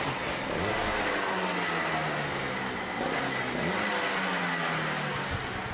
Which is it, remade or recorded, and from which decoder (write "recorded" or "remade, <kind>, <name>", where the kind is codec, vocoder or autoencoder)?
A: recorded